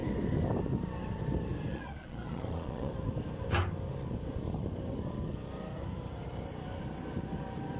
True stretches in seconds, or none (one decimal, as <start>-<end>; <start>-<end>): 0.0-1.7; 2.9-7.8

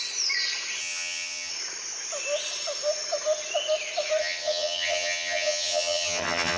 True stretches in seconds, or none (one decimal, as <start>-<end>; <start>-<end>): 0.0-0.8; 1.5-4.2

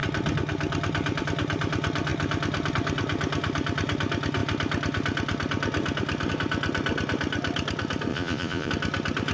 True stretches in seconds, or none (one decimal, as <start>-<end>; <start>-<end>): 0.0-8.1; 8.7-9.3

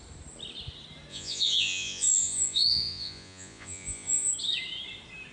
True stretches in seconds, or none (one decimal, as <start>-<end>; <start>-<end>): 0.0-1.1; 4.3-5.3

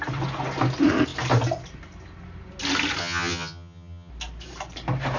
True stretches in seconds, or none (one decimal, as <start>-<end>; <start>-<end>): 0.0-3.0; 4.1-5.2

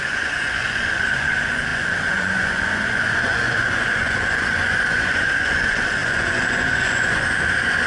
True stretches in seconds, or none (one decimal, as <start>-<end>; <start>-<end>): none

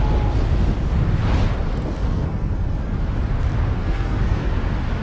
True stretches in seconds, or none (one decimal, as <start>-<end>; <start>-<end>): 0.0-2.0; 3.0-3.8; 4.5-5.0

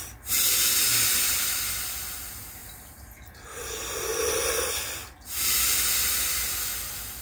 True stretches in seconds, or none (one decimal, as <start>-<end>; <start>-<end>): 0.0-2.6; 4.6-7.2